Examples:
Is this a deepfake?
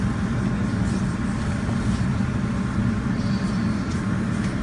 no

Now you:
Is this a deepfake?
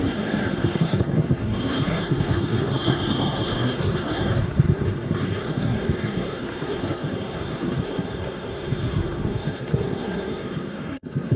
yes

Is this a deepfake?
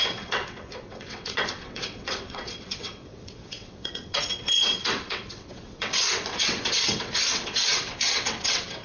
yes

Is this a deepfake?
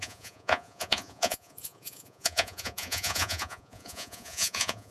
yes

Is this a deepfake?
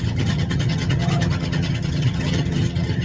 yes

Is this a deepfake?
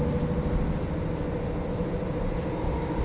no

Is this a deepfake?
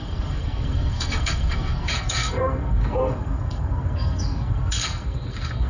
yes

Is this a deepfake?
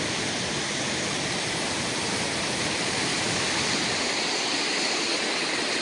yes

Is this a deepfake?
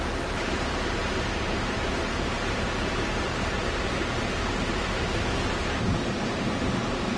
yes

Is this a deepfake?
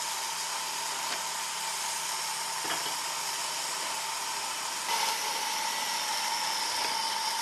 no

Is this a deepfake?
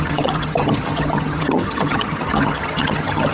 yes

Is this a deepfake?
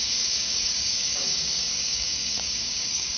yes